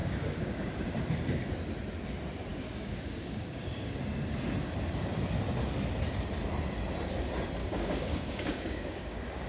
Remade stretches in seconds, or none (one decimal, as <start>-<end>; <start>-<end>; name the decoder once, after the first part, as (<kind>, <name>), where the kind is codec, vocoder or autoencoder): 0.0-1.0 (codec, DAC); 2.5-4.0; 7.6-9.5